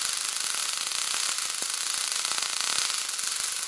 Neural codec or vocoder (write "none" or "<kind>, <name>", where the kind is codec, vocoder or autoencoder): vocoder, BigVGAN v2